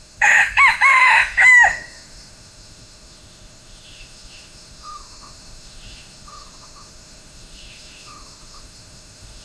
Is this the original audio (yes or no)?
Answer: no